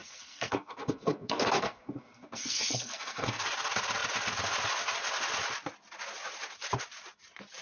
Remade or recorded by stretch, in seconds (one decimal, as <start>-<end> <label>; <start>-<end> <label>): 0.0-3.4 remade; 3.4-7.6 recorded